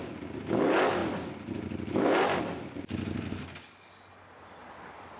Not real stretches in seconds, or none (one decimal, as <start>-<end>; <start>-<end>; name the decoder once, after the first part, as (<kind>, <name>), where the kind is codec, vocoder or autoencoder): none